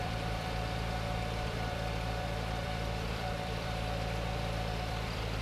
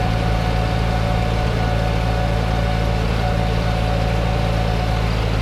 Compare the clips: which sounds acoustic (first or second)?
second